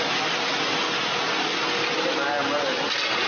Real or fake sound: real